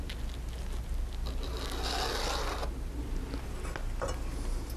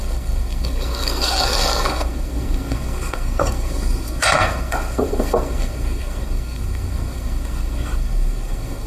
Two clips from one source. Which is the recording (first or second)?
first